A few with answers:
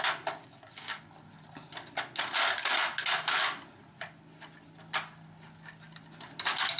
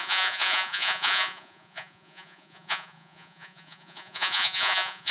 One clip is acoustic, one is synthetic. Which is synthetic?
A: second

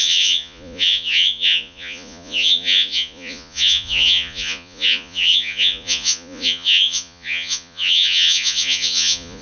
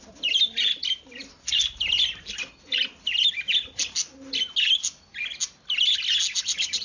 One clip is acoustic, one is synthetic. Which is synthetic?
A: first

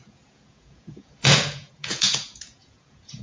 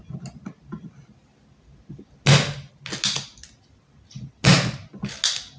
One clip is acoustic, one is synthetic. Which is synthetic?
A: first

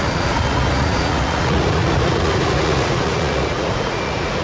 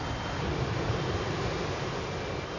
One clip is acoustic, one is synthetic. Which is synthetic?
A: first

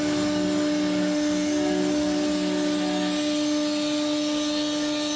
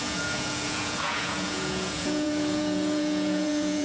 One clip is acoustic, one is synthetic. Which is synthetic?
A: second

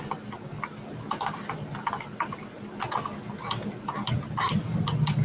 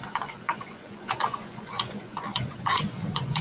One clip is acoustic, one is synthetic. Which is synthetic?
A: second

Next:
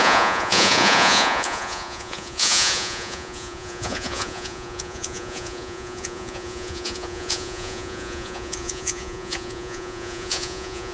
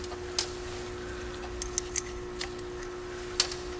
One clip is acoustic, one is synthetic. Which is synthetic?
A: first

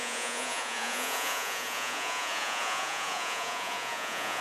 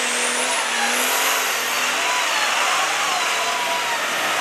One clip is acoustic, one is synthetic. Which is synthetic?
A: first